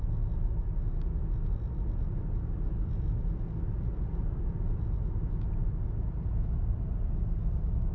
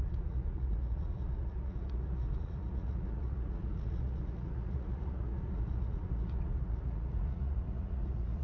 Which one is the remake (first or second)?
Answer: second